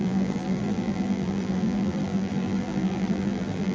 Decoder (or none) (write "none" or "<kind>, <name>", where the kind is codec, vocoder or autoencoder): vocoder, BigVGAN v2